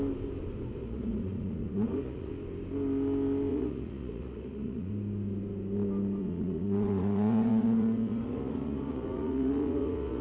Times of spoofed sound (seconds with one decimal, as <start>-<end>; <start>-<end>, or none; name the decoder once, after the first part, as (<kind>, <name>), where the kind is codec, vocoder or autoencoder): 0.8-2.3 (vocoder, Vocos); 3.5-4.9; 6.2-10.2